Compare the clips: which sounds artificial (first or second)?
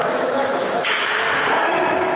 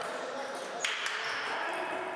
first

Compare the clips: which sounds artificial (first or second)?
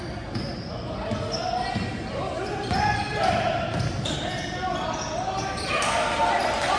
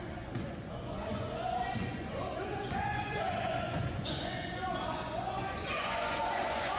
second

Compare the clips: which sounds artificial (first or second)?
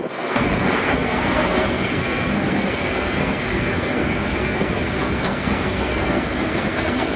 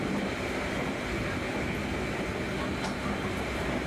first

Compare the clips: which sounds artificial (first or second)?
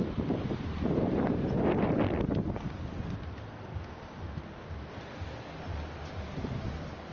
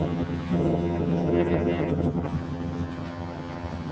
second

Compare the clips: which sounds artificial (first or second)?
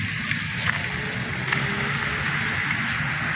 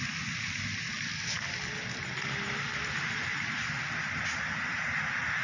second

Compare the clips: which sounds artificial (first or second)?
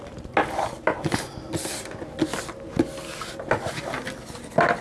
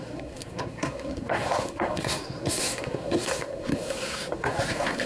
second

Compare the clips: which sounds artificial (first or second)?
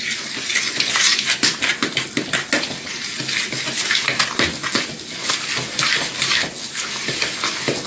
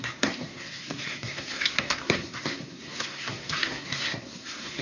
second